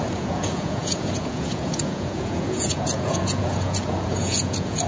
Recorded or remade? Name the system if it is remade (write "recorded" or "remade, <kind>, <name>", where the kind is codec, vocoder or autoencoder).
remade, vocoder, Vocos